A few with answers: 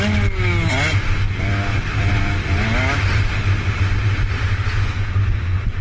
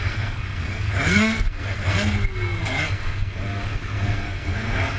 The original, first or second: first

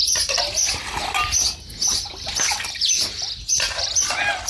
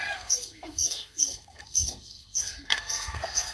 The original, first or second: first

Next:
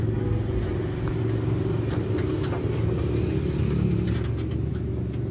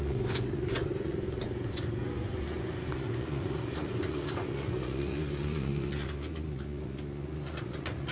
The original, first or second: first